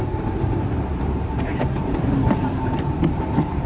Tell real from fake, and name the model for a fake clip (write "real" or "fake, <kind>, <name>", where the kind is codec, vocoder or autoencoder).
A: fake, vocoder, BigVGAN v2